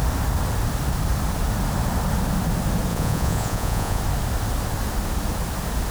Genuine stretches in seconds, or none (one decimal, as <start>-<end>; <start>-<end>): 0.0-2.9; 4.0-5.9